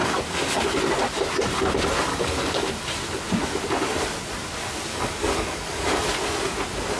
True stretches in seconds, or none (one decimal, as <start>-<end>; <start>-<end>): 0.7-2.1; 2.7-4.9; 6.0-7.0